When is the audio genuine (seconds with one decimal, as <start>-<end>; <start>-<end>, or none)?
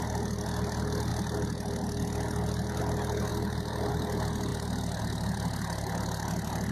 0.0-6.7